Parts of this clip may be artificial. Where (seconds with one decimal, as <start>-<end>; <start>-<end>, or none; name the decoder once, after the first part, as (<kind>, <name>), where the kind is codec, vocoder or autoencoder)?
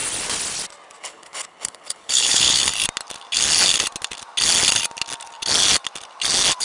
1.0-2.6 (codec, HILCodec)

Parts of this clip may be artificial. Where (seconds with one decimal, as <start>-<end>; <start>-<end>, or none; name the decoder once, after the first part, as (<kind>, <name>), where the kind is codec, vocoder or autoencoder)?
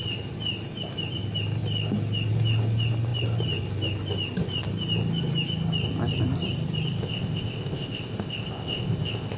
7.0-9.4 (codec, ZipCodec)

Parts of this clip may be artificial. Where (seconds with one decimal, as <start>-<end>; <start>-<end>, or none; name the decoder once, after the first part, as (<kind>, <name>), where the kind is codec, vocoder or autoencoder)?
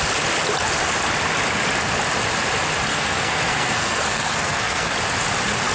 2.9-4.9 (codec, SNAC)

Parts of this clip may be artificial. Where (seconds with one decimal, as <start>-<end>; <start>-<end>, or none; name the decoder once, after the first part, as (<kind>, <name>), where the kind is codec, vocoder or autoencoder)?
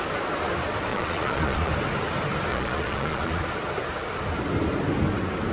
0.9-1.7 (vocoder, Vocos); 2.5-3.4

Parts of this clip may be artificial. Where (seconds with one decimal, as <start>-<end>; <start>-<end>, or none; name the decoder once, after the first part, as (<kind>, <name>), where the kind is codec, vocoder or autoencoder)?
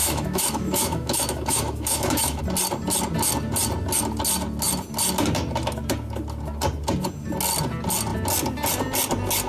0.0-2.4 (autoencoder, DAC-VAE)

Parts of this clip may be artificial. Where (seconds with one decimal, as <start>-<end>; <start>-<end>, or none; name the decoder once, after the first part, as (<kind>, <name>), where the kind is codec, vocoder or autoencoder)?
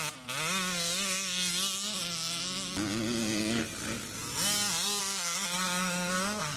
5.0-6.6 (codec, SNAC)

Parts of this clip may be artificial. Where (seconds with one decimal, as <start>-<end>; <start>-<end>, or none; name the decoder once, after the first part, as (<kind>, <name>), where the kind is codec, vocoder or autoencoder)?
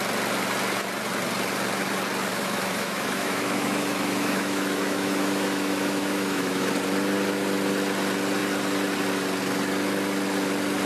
2.3-6.7 (autoencoder, DAC-VAE)